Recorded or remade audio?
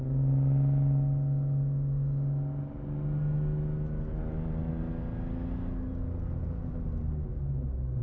recorded